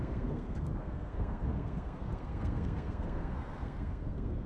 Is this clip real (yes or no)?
no